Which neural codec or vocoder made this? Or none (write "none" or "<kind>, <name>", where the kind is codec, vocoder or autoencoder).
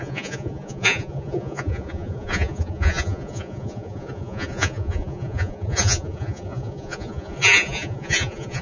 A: vocoder, Vocos